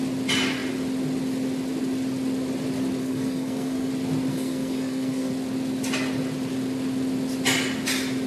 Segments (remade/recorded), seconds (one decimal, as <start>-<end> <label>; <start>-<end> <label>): 0.0-3.0 recorded; 3.0-3.9 remade; 3.9-4.3 recorded; 4.3-5.3 remade; 5.3-8.3 recorded